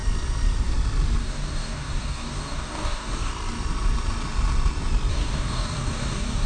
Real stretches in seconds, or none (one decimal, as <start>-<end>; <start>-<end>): 0.0-1.2; 3.3-5.1